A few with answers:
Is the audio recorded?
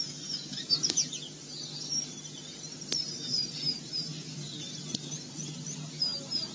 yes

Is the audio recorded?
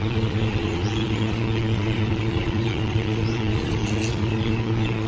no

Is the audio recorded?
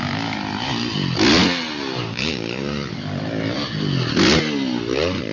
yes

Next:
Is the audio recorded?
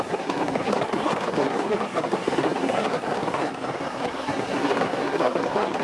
no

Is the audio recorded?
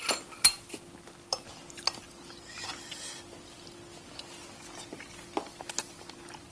yes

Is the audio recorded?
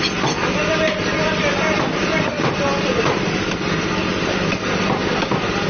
yes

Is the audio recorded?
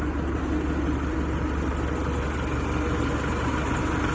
yes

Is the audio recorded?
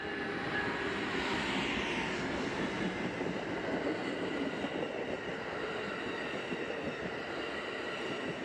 yes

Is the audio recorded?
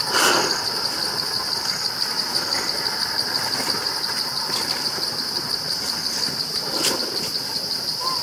yes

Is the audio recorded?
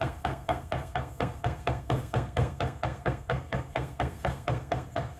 no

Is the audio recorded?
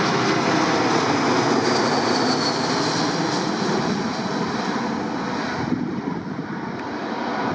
yes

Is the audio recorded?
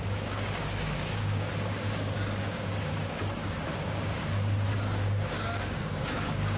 no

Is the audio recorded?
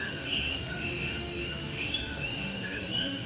no